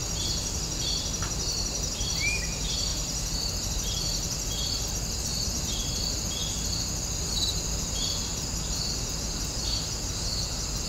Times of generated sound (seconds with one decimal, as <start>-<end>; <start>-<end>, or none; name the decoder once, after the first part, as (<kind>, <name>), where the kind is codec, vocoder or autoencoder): 0.0-6.4 (vocoder, BigVGAN v2); 7.2-10.9